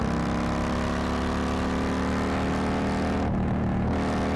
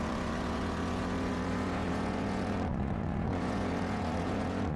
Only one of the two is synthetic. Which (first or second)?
second